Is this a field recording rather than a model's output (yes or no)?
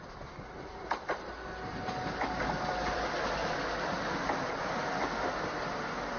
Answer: yes